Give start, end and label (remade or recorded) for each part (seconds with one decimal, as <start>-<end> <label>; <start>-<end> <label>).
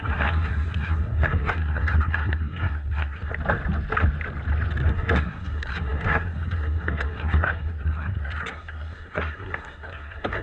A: 0.0-3.3 remade; 3.3-4.9 recorded; 4.9-10.4 remade